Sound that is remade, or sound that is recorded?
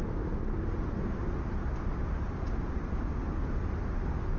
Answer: recorded